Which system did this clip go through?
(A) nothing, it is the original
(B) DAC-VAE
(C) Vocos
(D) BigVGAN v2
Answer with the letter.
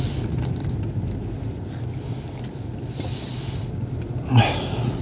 A